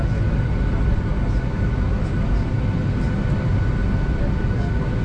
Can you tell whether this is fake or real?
real